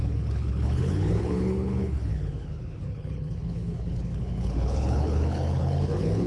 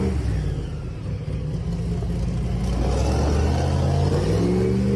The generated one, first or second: first